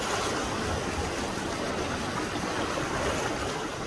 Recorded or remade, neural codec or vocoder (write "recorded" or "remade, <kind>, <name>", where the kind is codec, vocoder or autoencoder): recorded